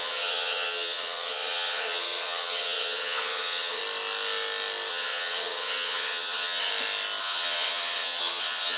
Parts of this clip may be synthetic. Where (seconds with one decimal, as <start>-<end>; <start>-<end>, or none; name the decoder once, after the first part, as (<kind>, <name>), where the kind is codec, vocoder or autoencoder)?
0.0-3.8 (vocoder, HiFi-GAN); 4.9-6.7; 7.2-8.8